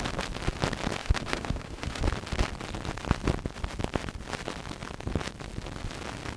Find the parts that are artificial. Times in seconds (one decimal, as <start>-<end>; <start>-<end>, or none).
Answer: 1.0-2.0

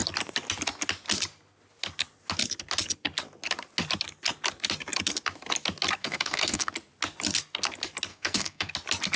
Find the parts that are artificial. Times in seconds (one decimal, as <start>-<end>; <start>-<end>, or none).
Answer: 6.0-6.7; 8.1-8.7